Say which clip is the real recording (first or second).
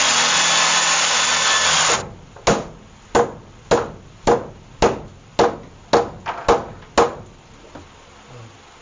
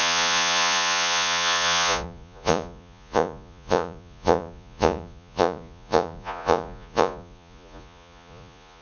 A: first